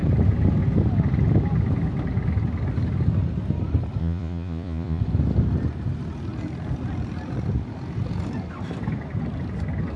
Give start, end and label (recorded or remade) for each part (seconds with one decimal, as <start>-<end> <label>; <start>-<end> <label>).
0.0-4.0 recorded; 4.0-5.0 remade; 5.0-10.0 recorded